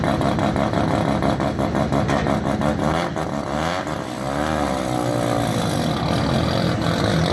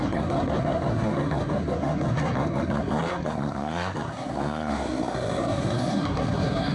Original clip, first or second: first